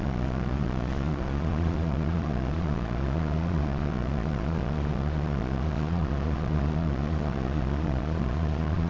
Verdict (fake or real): fake